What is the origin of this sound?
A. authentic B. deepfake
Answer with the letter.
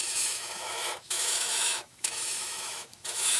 B